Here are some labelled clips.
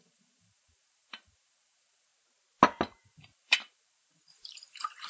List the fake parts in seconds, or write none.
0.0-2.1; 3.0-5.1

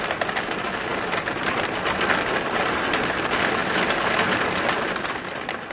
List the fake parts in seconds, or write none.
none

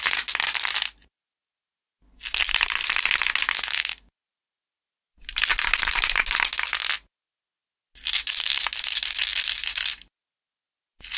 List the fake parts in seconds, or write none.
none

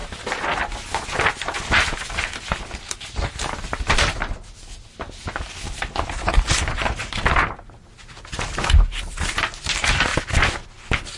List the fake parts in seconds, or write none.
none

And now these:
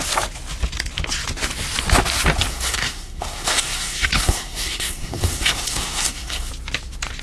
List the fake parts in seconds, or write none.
2.5-6.5

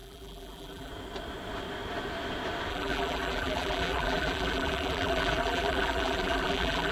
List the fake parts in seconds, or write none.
0.0-0.9; 2.7-6.9